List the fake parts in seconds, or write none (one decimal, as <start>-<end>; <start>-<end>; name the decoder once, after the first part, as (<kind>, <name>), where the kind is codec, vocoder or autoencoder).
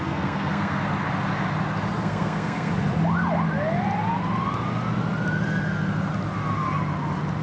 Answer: 0.0-0.8 (codec, SNAC); 2.0-2.7